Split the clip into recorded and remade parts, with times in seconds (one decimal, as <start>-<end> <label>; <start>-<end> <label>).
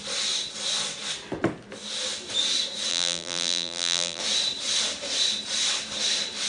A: 0.0-2.9 recorded; 2.9-4.2 remade; 4.2-6.5 recorded